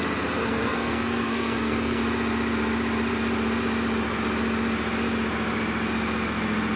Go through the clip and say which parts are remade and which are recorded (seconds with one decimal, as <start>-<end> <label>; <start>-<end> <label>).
0.0-0.4 recorded; 0.4-2.0 remade; 2.0-6.8 recorded

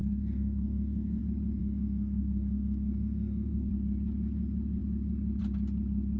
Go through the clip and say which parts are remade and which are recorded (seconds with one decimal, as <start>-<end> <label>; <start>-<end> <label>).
0.0-1.2 remade; 1.2-1.6 recorded; 1.6-3.7 remade; 3.7-6.2 recorded